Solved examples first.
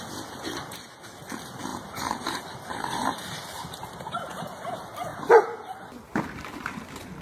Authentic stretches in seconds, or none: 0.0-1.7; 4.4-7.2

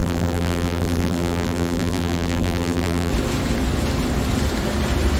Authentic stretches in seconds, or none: 3.1-5.2